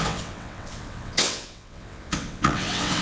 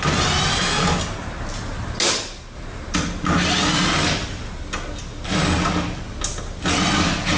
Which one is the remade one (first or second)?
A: first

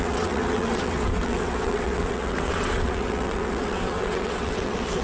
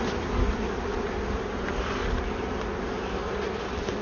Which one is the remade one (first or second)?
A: first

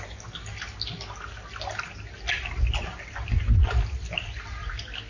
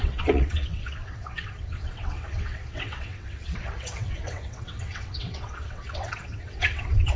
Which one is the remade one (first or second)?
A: second